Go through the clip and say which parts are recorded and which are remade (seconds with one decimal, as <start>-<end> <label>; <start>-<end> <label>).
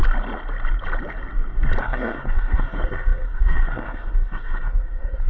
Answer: 0.0-1.8 recorded; 1.8-5.3 remade